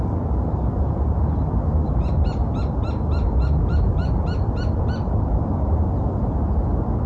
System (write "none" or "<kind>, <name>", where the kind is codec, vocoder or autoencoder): none